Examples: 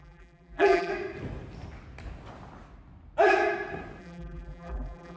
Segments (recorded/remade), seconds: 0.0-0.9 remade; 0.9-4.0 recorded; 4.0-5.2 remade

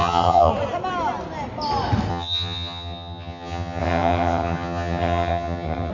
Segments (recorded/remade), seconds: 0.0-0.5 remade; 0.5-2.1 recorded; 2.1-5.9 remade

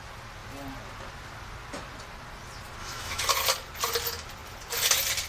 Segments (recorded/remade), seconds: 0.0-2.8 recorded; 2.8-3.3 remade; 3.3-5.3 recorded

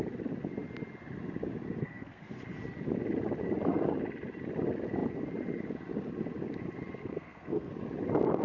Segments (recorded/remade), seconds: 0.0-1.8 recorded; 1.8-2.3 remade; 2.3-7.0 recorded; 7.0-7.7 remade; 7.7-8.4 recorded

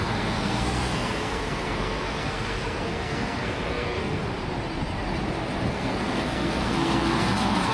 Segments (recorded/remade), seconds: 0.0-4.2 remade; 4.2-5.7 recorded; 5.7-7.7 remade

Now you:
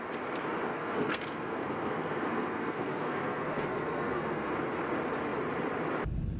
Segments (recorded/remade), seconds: 0.0-0.7 recorded; 0.7-4.5 remade; 4.5-6.4 recorded